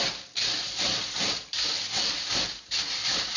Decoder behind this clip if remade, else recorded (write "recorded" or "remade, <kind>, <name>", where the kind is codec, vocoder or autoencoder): recorded